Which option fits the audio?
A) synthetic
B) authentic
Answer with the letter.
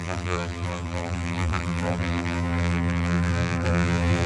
A